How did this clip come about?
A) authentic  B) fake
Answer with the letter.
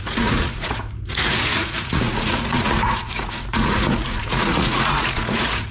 B